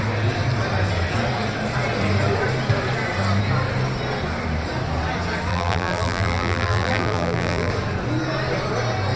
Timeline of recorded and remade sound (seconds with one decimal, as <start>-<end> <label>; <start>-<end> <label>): 0.0-5.5 recorded; 5.5-7.7 remade; 7.7-9.2 recorded